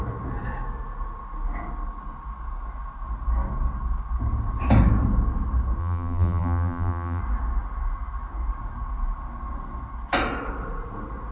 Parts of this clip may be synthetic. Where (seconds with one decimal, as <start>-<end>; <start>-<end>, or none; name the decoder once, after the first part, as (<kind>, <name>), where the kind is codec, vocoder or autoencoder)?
5.8-7.2 (vocoder, BigVGAN v2)

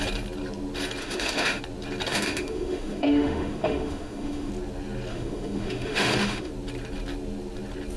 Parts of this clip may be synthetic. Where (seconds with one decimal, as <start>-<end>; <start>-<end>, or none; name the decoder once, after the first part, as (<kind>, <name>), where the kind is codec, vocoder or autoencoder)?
1.0-1.6 (autoencoder, DAC-VAE); 2.1-4.5; 5.1-6.5

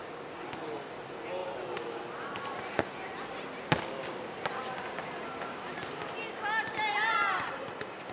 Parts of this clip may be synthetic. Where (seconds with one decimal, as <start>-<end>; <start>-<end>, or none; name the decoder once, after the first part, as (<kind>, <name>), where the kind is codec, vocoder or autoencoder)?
none

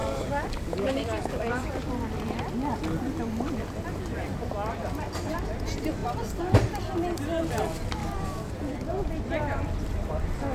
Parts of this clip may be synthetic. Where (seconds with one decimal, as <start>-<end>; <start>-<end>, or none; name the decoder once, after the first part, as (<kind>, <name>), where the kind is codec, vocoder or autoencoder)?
0.0-1.7 (codec, DAC); 8.0-8.5

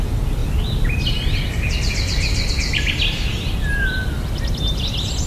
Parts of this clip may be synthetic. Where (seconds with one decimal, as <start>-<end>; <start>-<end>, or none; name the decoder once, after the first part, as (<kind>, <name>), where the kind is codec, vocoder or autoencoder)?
none

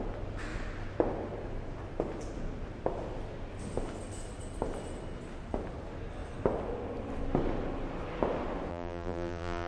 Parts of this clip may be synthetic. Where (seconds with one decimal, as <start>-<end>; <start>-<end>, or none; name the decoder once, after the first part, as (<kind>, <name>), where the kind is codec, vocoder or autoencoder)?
8.7-9.7 (vocoder, BigVGAN v2)

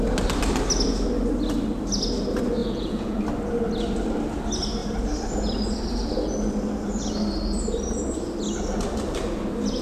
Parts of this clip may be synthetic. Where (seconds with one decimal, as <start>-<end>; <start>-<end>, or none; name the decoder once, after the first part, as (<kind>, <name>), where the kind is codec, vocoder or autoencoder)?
2.6-3.2 (vocoder, Vocos)